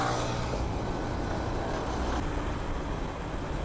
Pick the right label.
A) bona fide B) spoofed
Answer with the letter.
A